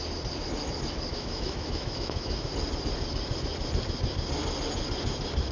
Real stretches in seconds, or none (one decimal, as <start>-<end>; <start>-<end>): 0.0-1.1; 2.5-5.5